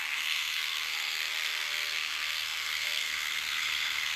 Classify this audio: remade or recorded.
remade